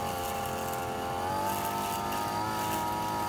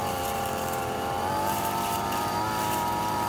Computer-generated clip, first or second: second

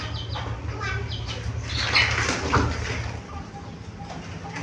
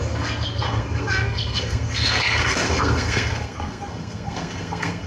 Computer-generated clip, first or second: second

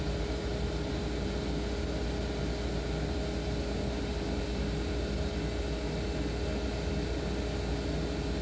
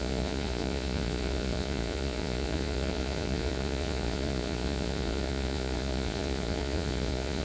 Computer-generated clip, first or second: second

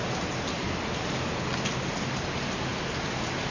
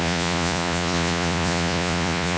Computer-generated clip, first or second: second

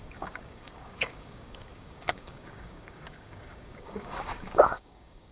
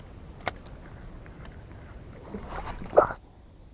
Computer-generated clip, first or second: first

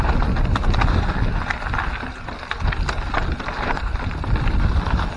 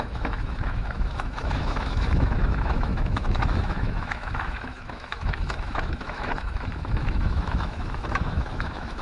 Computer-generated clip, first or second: second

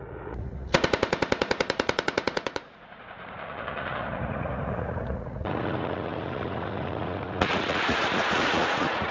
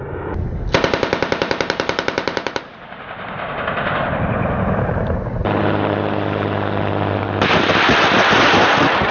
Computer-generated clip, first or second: first